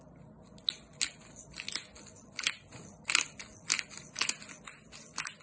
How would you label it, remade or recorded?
recorded